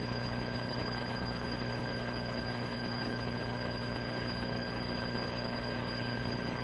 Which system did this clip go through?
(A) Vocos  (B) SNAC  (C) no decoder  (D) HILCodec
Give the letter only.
D